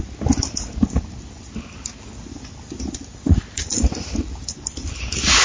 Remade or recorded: recorded